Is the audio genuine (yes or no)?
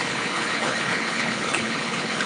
no